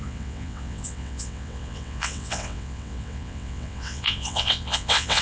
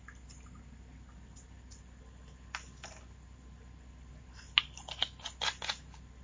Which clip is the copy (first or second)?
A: first